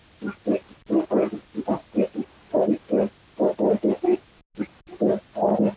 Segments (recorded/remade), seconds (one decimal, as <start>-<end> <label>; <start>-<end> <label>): 0.0-0.8 recorded; 0.8-1.6 remade; 1.6-5.8 recorded

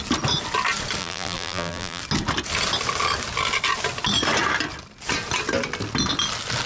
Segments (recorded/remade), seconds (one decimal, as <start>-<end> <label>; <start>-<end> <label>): 0.0-1.0 recorded; 1.0-2.0 remade; 2.0-6.7 recorded

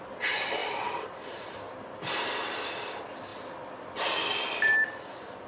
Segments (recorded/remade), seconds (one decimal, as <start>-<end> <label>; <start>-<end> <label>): 0.0-0.6 recorded; 0.6-1.4 remade; 1.4-5.5 recorded

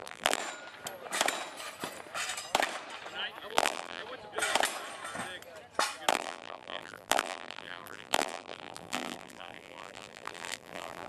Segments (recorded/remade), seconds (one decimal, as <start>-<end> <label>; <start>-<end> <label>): 0.0-0.4 remade; 0.4-3.5 recorded; 3.5-4.0 remade; 4.0-6.1 recorded; 6.1-11.1 remade

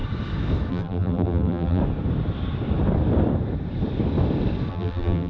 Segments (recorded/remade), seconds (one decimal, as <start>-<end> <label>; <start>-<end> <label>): 0.0-0.7 recorded; 0.7-1.8 remade; 1.8-4.7 recorded; 4.7-5.3 remade